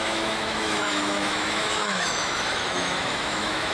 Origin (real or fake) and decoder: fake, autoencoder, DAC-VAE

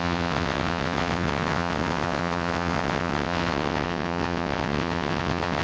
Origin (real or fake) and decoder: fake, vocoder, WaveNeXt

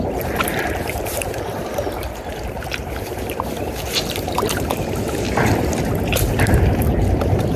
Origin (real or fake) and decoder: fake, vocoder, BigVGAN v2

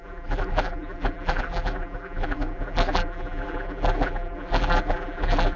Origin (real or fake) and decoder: fake, vocoder, BigVGAN v2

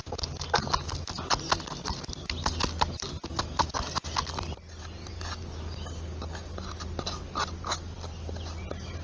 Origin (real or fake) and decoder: real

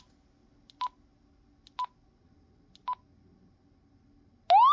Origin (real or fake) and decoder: real